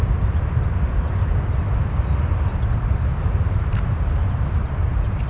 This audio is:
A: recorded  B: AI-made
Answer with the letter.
A